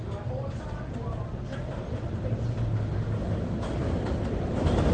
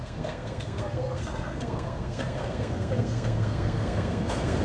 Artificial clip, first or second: second